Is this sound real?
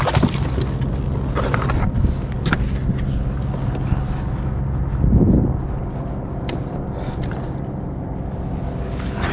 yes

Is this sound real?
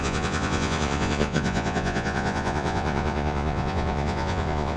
no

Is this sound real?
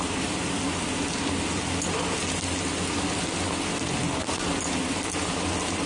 yes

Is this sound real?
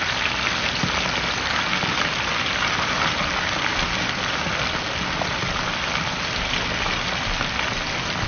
yes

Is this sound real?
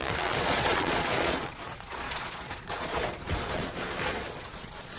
no